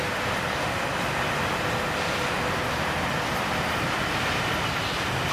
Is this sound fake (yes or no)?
no